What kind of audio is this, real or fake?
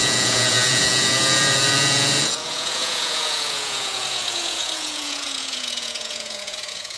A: fake